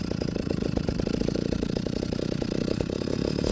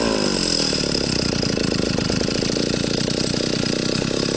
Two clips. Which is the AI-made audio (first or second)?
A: first